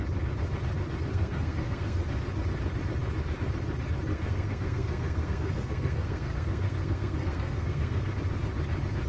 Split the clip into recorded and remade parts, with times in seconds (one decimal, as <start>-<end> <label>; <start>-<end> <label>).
0.0-1.1 recorded; 1.1-2.0 remade; 2.0-4.1 recorded; 4.1-8.1 remade; 8.1-9.1 recorded